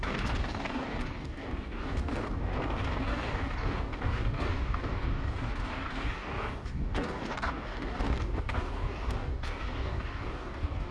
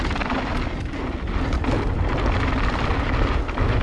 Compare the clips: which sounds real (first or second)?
second